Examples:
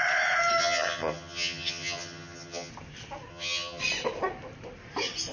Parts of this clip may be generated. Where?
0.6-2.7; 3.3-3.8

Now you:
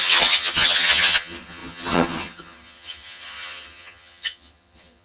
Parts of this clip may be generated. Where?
0.0-5.0

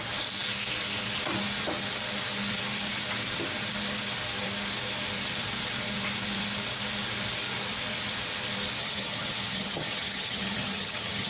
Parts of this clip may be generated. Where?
8.8-11.3

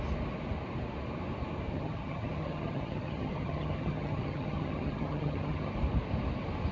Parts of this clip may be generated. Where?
1.7-5.7

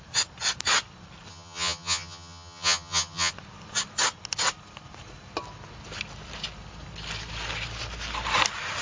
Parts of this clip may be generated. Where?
1.3-3.3